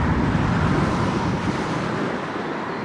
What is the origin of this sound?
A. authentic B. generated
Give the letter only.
A